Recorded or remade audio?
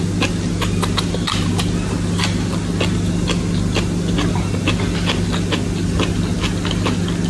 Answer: recorded